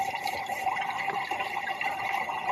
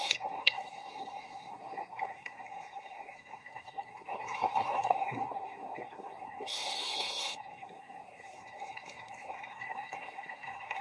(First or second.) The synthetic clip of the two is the second